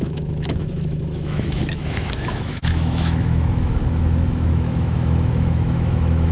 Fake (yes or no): yes